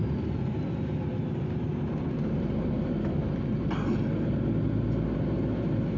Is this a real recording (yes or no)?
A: yes